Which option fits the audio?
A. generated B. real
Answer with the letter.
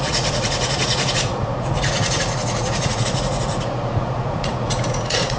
A